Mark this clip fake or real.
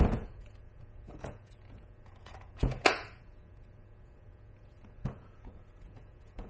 fake